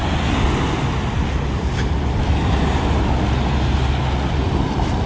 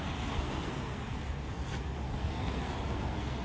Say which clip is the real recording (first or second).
first